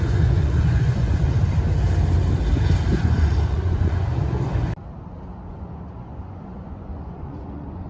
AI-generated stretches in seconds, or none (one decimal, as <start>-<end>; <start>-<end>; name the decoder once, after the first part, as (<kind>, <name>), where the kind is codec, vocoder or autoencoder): 0.0-1.4 (vocoder, Vocos); 2.9-4.5; 5.5-7.9